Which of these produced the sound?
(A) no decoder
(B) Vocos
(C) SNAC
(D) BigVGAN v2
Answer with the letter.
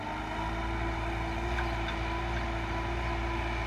A